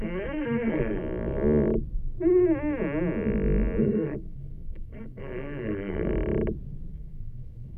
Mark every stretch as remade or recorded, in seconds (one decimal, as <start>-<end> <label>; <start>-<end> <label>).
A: 0.0-1.0 remade; 1.0-3.8 recorded; 3.8-6.1 remade; 6.1-6.9 recorded; 6.9-7.8 remade